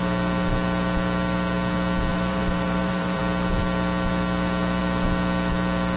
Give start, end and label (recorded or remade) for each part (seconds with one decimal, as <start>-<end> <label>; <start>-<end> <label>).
0.0-2.1 recorded; 2.1-3.2 remade; 3.2-6.0 recorded